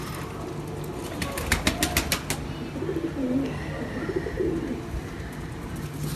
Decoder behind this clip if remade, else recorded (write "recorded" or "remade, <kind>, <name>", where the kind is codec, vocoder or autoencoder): recorded